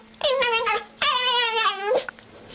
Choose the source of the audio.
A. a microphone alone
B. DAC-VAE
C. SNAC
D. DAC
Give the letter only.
A